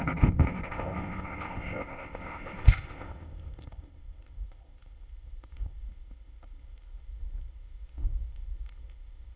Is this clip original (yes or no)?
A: no